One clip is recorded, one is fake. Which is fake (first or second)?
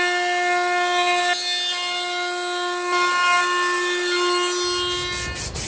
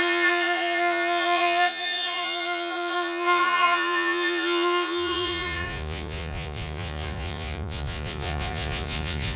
second